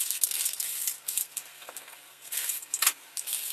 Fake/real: fake